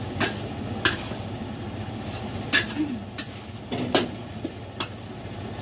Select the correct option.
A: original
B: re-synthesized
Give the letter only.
A